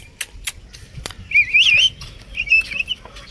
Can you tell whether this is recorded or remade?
recorded